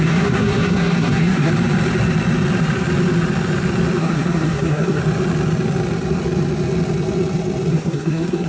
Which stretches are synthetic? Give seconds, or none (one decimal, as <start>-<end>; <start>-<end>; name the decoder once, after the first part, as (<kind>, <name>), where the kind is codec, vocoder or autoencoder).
0.0-1.5 (codec, SNAC); 4.0-5.0; 7.7-8.5